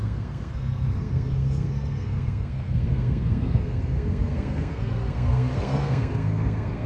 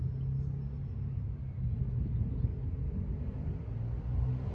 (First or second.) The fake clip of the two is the first